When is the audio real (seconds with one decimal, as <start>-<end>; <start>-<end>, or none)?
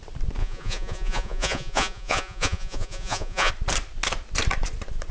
0.0-0.4; 3.5-5.1